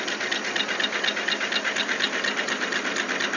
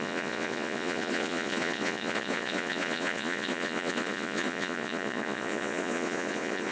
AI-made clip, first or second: second